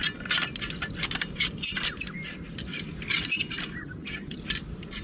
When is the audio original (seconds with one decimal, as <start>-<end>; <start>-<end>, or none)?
0.0-3.8; 4.4-5.0